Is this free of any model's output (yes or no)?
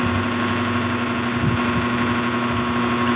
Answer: yes